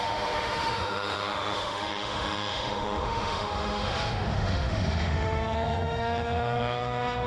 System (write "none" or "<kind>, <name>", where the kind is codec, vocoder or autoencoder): autoencoder, DAC-VAE